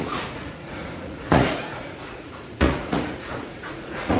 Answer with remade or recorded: remade